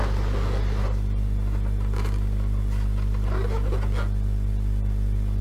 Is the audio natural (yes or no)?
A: yes